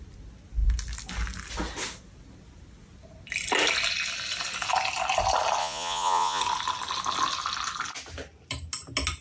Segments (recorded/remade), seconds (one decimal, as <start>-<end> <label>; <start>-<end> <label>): 0.0-5.6 recorded; 5.6-6.4 remade; 6.4-9.2 recorded